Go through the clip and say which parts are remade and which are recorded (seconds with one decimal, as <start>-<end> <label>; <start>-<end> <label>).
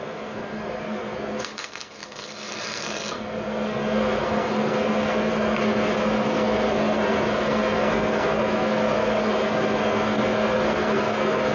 0.0-11.5 remade